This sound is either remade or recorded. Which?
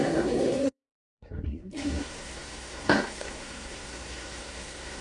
remade